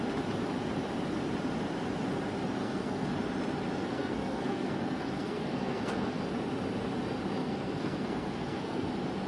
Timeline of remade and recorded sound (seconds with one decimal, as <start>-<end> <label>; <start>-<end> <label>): 0.0-2.6 recorded; 2.6-3.2 remade; 3.2-3.8 recorded; 3.8-6.2 remade; 6.2-7.4 recorded; 7.4-8.9 remade; 8.9-9.3 recorded